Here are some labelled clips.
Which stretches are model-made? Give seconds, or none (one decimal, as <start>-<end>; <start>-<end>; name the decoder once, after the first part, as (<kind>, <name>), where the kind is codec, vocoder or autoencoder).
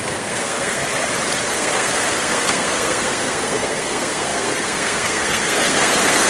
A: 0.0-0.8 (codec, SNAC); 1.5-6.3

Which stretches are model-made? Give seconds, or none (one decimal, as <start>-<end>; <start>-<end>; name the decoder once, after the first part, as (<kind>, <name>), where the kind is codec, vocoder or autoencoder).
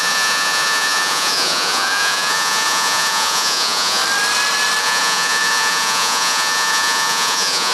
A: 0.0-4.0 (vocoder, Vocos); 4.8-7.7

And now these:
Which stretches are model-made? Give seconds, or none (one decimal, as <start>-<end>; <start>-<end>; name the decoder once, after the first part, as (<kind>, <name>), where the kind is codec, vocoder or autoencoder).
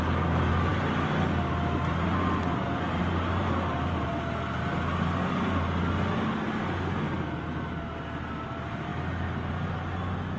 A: 3.4-4.1 (vocoder, BigVGAN v2)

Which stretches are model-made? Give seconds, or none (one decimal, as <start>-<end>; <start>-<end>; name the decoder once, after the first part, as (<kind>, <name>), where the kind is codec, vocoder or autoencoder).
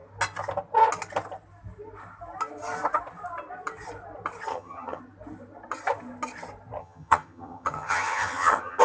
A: 4.5-5.0 (vocoder, HiFi-GAN); 6.8-8.8